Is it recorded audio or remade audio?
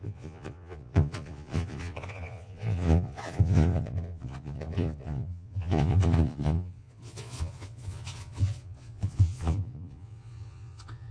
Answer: remade